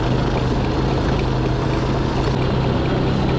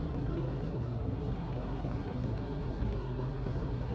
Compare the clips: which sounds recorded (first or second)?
first